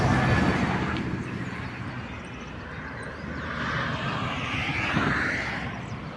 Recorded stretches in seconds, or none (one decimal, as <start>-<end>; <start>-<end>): 0.0-6.2